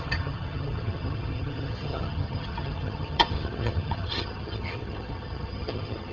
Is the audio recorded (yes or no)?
no